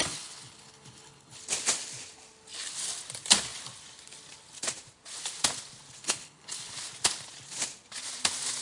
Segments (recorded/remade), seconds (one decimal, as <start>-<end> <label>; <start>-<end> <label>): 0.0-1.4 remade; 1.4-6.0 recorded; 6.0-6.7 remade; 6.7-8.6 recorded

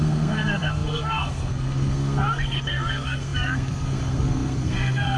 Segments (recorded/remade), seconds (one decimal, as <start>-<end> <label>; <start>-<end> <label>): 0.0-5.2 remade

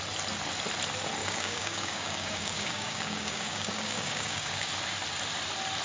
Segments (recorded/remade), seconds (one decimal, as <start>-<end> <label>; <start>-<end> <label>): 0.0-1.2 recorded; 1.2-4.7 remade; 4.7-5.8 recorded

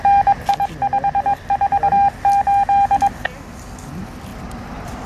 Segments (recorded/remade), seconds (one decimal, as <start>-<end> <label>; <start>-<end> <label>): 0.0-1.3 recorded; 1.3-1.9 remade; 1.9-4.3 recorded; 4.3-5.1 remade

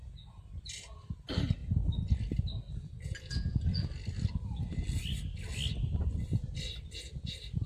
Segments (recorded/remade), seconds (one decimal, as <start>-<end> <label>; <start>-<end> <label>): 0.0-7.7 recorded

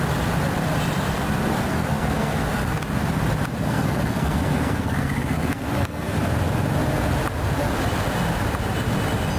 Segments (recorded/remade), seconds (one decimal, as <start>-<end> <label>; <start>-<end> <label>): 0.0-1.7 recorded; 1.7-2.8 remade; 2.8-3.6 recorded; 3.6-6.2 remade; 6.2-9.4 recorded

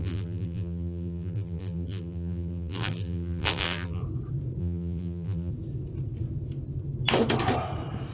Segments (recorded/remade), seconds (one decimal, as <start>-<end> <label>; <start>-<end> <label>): 0.0-4.0 remade; 4.0-4.6 recorded; 4.6-5.5 remade; 5.5-8.1 recorded

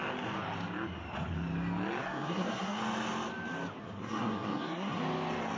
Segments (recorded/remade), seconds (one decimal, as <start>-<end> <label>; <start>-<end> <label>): 0.0-2.0 recorded; 2.0-2.8 remade; 2.8-3.8 recorded; 3.8-5.0 remade; 5.0-5.6 recorded